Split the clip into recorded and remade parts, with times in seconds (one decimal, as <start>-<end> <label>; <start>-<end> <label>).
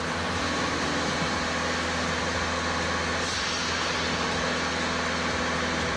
0.0-6.0 recorded